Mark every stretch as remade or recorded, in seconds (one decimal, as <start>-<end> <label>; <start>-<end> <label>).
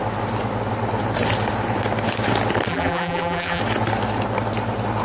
0.0-2.7 recorded; 2.7-3.6 remade; 3.6-5.0 recorded